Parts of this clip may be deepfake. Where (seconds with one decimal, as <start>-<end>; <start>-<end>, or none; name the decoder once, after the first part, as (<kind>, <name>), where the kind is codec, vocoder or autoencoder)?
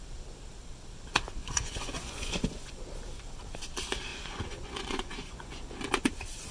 1.4-2.8 (vocoder, Vocos); 4.1-6.1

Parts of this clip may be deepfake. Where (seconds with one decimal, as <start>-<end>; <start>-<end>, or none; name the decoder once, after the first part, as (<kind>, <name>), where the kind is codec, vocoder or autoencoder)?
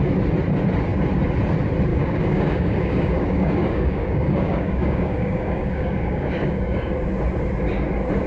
1.9-6.9 (codec, DAC)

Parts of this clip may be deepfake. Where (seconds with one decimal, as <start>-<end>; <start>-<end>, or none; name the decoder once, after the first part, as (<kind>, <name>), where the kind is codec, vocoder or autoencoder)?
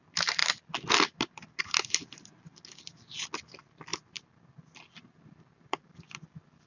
none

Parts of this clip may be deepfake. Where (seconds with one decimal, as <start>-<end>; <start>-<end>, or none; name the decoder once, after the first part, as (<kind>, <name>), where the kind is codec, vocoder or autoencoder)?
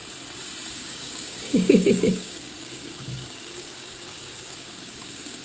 0.7-5.4 (codec, DAC)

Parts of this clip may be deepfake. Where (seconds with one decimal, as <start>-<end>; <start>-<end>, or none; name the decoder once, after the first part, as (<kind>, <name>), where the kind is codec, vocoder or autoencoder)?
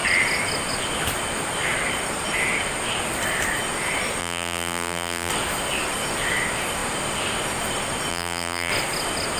4.2-5.3 (vocoder, BigVGAN v2); 8.1-8.7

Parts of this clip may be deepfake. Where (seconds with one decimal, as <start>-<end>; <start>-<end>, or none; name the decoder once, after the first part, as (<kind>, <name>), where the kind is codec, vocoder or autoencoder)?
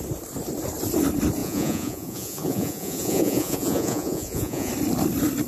1.4-4.7 (vocoder, Vocos)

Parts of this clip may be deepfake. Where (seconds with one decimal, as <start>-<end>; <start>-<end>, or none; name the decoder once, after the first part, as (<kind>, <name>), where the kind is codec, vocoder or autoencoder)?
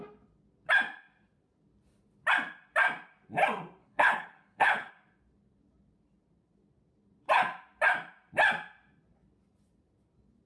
3.8-4.9 (codec, HILCodec)